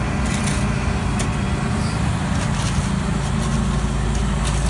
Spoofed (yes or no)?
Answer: no